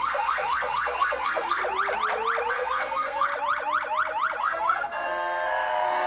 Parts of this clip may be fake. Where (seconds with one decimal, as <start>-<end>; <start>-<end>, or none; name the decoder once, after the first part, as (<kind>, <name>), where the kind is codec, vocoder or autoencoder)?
0.0-1.6 (codec, SNAC); 2.5-3.3; 4.4-6.1